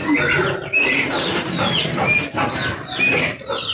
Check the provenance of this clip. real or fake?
real